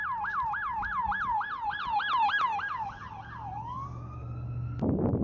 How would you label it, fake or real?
real